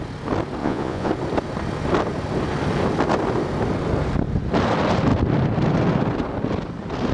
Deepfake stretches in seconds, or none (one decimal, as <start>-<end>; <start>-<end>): 0.6-1.1